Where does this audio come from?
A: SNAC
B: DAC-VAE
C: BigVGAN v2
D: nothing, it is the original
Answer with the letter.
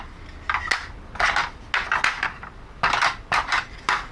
D